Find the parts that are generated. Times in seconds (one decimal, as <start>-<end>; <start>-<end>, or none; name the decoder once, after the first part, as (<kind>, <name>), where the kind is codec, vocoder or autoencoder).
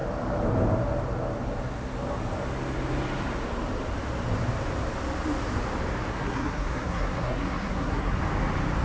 6.1-8.2 (codec, SNAC)